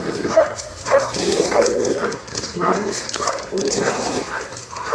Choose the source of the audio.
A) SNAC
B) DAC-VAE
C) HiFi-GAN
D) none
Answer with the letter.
A